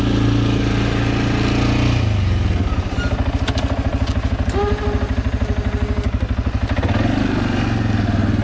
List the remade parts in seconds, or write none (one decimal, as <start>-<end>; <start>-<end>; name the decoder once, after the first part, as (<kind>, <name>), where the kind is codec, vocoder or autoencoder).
none